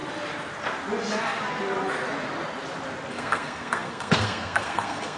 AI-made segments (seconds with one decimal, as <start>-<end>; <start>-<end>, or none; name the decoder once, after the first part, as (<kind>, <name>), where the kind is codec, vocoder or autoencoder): 3.1-5.2 (codec, SNAC)